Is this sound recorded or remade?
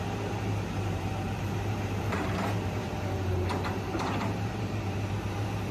remade